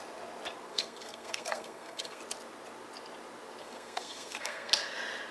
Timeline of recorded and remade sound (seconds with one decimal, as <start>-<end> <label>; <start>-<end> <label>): 0.0-0.7 recorded; 0.7-2.2 remade; 2.2-3.6 recorded; 3.6-4.7 remade; 4.7-5.3 recorded